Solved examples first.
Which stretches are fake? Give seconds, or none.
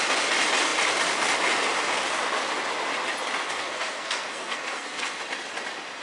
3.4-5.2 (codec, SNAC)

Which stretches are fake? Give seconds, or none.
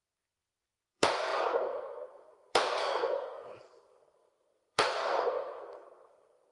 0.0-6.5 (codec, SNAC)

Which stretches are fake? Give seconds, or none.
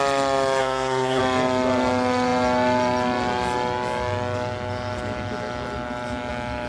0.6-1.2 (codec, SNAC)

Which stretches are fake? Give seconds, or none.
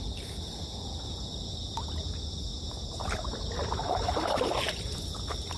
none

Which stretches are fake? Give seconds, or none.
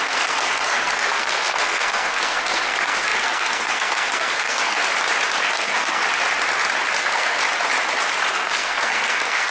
0.0-4.8 (codec, SNAC); 5.4-6.0; 7.0-7.4; 8.3-9.5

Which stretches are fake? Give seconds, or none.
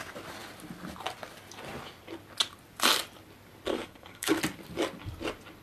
3.7-4.4 (codec, SNAC)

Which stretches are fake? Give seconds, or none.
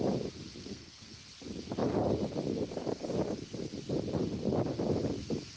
0.6-1.2 (codec, SNAC)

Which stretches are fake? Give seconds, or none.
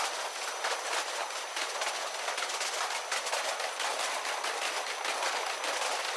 none